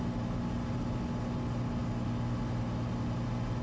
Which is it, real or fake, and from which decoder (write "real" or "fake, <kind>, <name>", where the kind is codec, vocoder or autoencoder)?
real